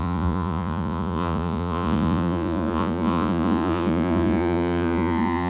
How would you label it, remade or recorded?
remade